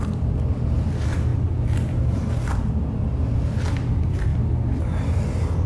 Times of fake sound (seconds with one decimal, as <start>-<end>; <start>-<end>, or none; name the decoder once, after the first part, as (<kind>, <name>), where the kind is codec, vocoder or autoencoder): 1.3-2.7 (vocoder, BigVGAN v2); 4.3-5.7

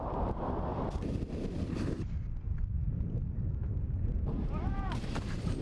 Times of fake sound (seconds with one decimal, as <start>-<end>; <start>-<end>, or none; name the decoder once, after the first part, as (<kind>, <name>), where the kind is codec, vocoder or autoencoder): 0.0-0.7 (vocoder, BigVGAN v2); 4.1-5.6